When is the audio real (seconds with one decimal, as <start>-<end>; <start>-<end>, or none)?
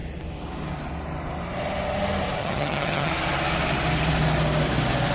0.0-2.4; 3.1-5.1